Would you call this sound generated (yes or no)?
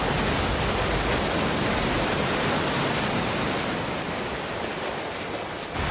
no